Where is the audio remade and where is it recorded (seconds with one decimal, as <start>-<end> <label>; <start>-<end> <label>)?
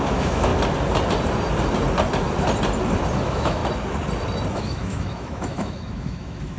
0.0-0.5 remade; 0.5-3.1 recorded; 3.1-3.6 remade; 3.6-4.5 recorded; 4.5-6.6 remade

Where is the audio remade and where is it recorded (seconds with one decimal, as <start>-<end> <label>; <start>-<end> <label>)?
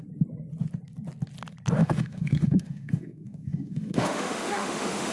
0.0-1.8 recorded; 1.8-5.1 remade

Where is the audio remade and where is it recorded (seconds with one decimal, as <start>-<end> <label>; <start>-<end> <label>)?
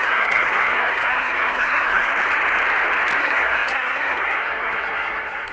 0.0-2.1 remade; 2.1-3.2 recorded; 3.2-5.5 remade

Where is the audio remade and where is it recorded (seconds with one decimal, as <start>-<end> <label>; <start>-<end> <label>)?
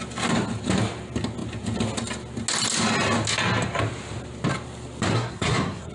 0.0-5.1 recorded; 5.1-5.9 remade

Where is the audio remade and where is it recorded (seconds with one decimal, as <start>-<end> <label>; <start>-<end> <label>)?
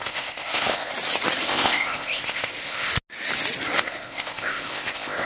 0.0-0.9 remade; 0.9-1.5 recorded; 1.5-2.9 remade; 2.9-3.8 recorded; 3.8-5.3 remade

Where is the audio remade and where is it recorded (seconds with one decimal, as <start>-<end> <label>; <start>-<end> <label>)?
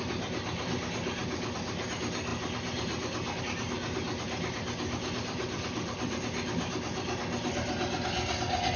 0.0-8.8 recorded